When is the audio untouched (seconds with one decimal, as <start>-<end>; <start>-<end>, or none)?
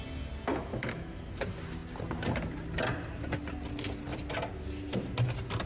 0.0-0.5; 1.2-5.7